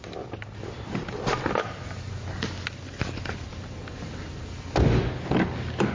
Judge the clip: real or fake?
real